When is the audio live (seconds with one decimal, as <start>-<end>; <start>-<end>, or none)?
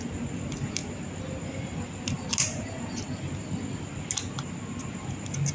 0.0-5.5